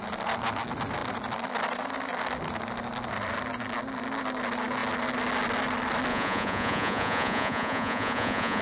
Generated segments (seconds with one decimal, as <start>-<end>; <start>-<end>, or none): 6.1-8.6

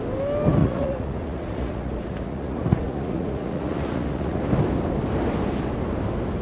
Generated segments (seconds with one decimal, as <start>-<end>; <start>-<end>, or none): 0.6-4.4

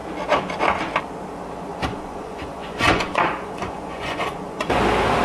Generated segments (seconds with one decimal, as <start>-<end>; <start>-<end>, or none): 1.7-4.8

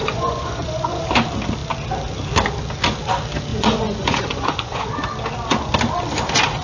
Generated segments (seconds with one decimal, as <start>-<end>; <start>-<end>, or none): 0.0-1.0; 3.5-4.9